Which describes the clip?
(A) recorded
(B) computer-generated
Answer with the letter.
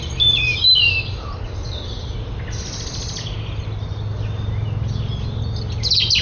A